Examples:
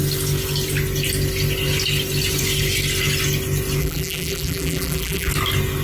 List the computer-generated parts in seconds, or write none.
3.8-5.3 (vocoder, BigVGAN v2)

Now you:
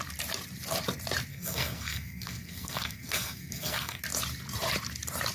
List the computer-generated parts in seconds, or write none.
1.3-4.0 (codec, SNAC)

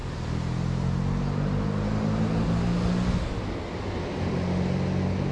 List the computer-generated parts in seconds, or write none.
none

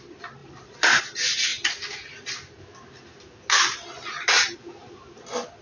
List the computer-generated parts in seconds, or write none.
0.4-1.0 (vocoder, BigVGAN v2)

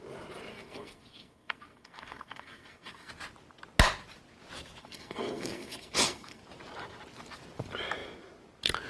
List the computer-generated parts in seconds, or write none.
0.5-3.1 (codec, SNAC); 4.8-6.4